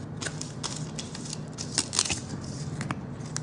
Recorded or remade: recorded